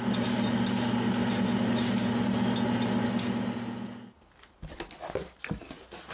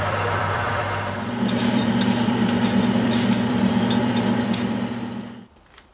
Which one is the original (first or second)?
first